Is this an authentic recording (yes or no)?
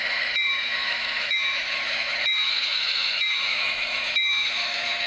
no